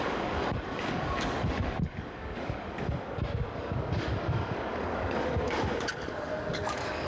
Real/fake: fake